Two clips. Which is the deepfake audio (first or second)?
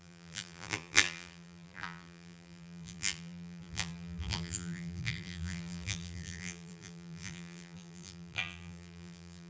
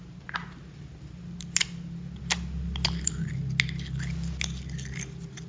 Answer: first